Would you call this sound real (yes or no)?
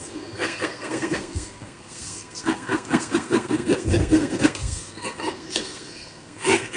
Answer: no